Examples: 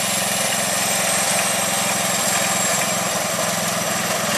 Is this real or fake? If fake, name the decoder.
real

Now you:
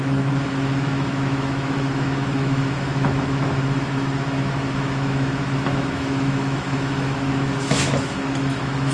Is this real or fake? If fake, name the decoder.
fake, autoencoder, DAC-VAE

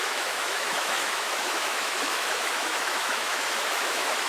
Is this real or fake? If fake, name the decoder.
fake, autoencoder, DAC-VAE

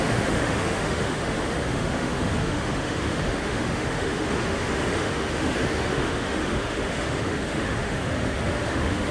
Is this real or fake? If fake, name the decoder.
fake, autoencoder, DAC-VAE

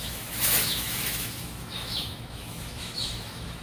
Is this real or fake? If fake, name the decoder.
fake, autoencoder, DAC-VAE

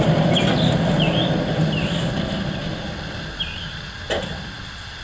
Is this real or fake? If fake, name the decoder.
real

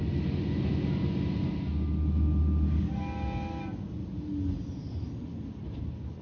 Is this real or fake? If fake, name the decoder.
real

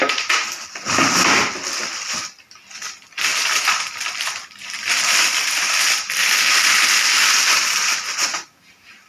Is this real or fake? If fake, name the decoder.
real